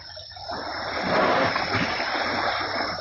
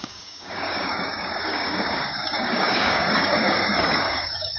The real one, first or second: first